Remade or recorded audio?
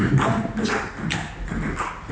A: recorded